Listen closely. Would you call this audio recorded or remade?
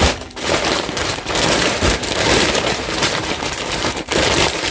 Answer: remade